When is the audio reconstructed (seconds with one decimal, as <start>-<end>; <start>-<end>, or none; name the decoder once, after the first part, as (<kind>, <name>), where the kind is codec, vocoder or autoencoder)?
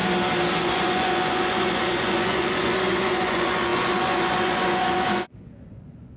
0.6-6.2 (vocoder, Vocos)